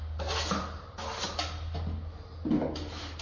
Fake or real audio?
real